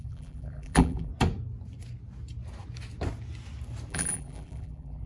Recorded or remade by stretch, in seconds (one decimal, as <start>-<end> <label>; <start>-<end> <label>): 0.0-1.1 remade; 1.1-3.9 recorded; 3.9-5.1 remade